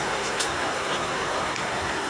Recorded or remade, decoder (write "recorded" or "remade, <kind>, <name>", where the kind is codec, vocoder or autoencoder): remade, codec, SNAC